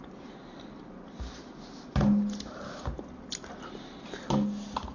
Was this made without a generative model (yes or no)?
yes